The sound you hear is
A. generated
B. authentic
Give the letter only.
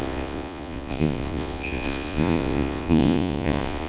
A